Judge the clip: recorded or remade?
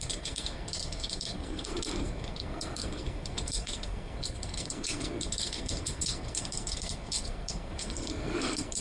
remade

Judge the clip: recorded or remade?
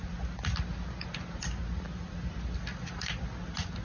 recorded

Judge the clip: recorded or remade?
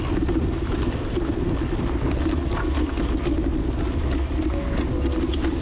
recorded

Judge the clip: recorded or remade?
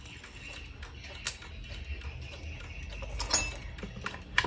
recorded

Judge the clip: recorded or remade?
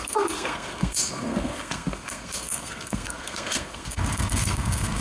remade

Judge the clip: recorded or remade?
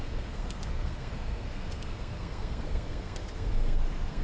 remade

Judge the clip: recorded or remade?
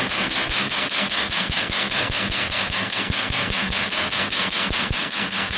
remade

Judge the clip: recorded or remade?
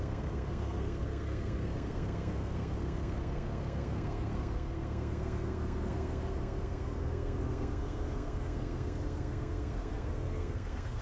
remade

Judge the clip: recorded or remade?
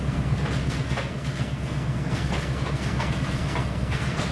remade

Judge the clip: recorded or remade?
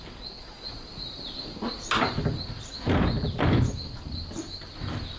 recorded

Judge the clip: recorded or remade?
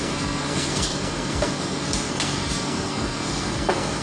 remade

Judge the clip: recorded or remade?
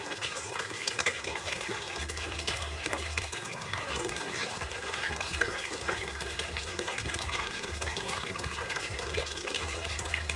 remade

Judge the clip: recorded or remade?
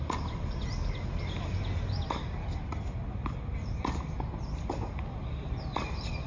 recorded